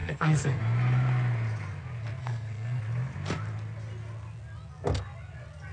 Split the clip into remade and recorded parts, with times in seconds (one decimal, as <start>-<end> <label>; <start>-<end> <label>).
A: 0.0-0.6 remade; 0.6-2.2 recorded; 2.2-2.8 remade; 2.8-5.7 recorded